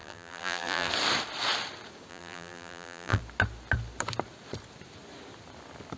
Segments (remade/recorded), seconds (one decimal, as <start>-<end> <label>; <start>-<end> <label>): 0.0-0.9 remade; 0.9-2.1 recorded; 2.1-3.2 remade; 3.2-6.0 recorded